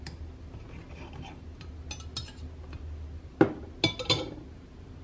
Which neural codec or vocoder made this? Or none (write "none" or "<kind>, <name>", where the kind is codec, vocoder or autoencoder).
none